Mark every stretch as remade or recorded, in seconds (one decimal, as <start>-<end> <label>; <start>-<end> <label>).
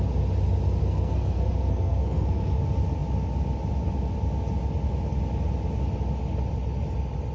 0.0-0.8 recorded; 0.8-2.6 remade; 2.6-7.3 recorded